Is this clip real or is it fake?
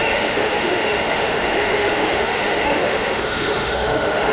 fake